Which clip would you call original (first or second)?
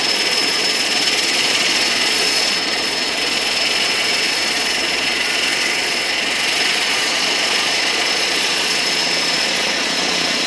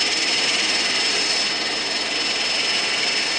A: second